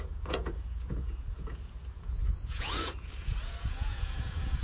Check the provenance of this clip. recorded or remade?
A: remade